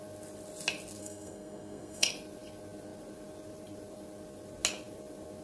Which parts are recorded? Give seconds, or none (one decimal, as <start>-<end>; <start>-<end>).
0.0-1.0; 2.1-5.4